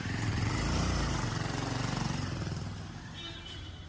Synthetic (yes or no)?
yes